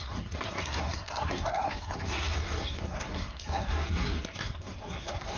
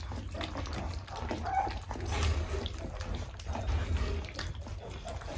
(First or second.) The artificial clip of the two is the first